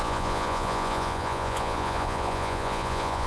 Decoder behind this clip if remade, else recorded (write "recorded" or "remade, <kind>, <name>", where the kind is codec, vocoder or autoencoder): remade, vocoder, Vocos